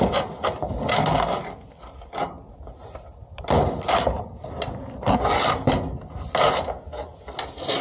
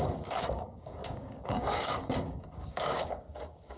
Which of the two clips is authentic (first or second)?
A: first